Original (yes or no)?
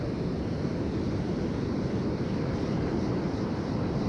no